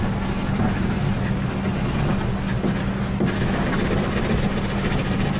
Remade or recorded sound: recorded